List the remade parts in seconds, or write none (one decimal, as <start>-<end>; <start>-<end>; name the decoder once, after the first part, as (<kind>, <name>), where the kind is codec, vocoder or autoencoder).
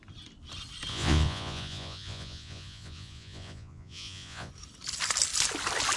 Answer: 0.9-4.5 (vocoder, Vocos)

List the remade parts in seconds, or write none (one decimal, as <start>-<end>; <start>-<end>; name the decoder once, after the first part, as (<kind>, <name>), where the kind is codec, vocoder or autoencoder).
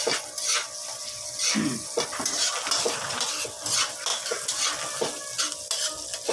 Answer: none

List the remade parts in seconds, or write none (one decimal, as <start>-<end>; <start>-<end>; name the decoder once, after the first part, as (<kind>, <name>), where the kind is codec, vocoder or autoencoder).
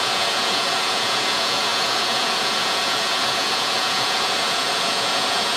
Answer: 0.0-5.6 (vocoder, Vocos)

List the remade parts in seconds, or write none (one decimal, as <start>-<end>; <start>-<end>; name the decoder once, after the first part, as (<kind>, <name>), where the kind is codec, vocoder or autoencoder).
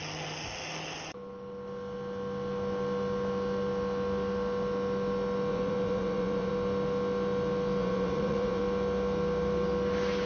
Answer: 5.5-6.5 (vocoder, Vocos); 7.8-8.6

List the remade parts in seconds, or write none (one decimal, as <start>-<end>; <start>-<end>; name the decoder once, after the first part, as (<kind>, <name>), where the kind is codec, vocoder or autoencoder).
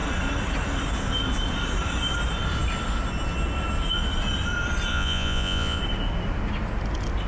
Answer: 4.9-5.8 (vocoder, Vocos)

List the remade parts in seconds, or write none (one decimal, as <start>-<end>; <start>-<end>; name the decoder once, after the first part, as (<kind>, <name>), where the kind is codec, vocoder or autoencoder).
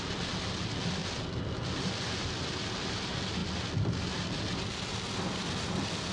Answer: none